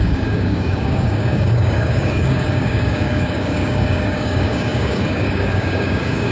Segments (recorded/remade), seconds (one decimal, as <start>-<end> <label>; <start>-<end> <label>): 0.0-6.3 remade